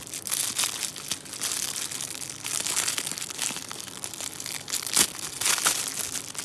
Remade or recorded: recorded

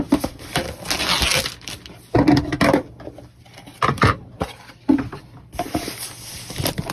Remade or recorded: recorded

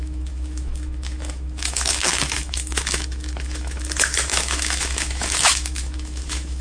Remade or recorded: remade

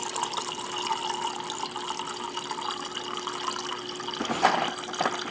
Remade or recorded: recorded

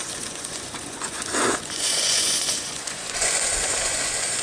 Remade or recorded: remade